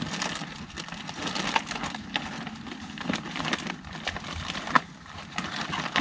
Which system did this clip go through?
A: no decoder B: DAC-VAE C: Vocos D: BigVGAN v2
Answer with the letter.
A